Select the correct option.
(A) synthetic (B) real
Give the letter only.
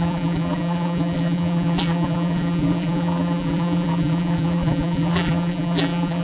A